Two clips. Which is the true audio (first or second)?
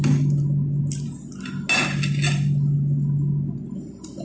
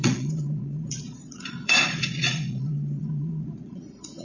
first